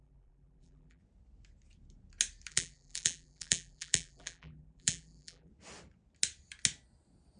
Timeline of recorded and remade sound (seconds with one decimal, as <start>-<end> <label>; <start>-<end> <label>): 0.0-1.0 remade; 1.0-2.5 recorded; 2.5-5.5 remade; 5.5-7.4 recorded